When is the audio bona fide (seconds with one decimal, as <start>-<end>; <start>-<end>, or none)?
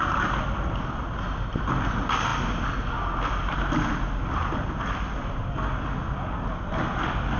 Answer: 0.0-7.4